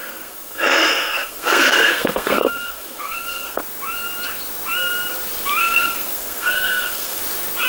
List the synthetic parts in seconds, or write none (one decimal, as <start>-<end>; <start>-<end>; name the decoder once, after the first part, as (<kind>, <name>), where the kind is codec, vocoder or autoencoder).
0.0-3.6 (codec, SNAC); 5.6-7.2